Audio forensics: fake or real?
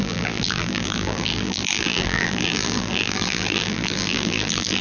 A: fake